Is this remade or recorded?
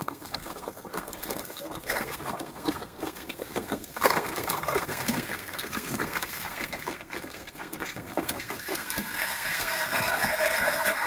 remade